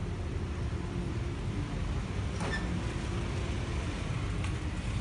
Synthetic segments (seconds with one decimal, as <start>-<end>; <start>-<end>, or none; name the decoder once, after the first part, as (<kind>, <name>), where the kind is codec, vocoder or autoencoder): none